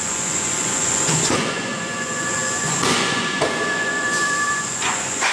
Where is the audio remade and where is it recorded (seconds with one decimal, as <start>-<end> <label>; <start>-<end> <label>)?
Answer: 0.0-5.3 remade